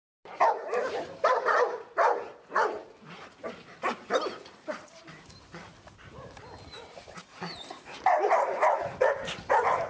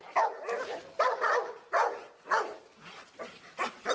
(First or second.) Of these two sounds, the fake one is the first